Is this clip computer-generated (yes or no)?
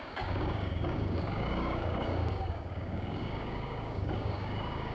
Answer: yes